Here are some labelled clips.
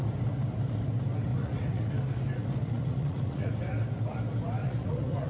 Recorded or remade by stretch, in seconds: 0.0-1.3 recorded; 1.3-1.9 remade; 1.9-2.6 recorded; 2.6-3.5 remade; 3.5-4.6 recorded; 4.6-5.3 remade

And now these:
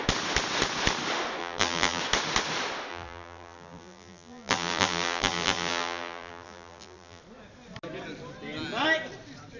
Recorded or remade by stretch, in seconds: 0.0-1.4 recorded; 1.4-2.0 remade; 2.0-2.9 recorded; 2.9-7.2 remade; 7.2-9.6 recorded

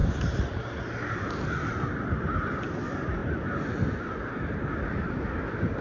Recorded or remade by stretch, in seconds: 0.0-5.8 recorded

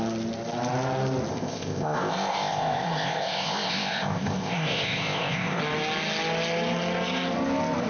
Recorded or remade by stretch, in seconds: 0.0-1.3 recorded; 1.3-5.6 remade; 5.6-7.9 recorded

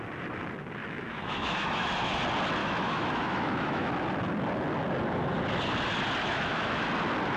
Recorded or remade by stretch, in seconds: 0.0-0.8 recorded; 0.8-2.2 remade; 2.2-2.6 recorded; 2.6-3.9 remade; 3.9-6.2 recorded; 6.2-6.8 remade; 6.8-7.4 recorded

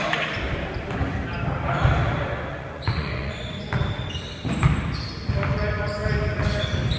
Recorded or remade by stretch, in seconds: 0.0-2.5 recorded; 2.5-3.6 remade; 3.6-7.0 recorded

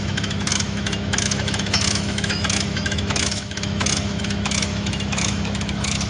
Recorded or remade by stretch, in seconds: 0.0-6.1 remade

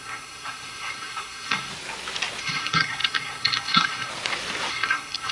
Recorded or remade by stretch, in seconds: 0.0-1.7 remade; 1.7-2.4 recorded; 2.4-4.1 remade; 4.1-4.7 recorded; 4.7-5.3 remade